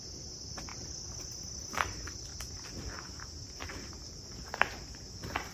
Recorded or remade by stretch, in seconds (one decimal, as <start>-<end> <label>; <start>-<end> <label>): 0.0-5.5 recorded